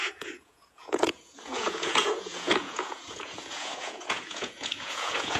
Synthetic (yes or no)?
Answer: yes